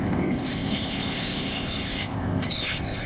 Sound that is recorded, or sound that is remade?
remade